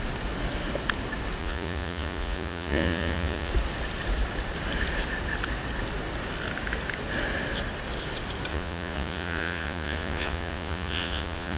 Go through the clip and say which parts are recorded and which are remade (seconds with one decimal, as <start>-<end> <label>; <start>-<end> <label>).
0.0-1.4 recorded; 1.4-3.5 remade; 3.5-8.5 recorded; 8.5-11.6 remade